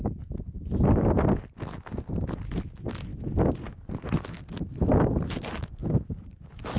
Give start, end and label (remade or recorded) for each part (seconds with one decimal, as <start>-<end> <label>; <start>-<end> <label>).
0.0-5.8 recorded; 5.8-6.8 remade